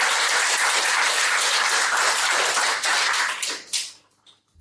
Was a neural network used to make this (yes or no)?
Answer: no